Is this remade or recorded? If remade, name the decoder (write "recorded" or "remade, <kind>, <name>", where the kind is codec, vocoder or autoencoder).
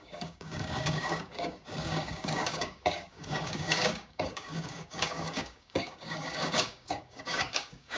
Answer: remade, codec, DAC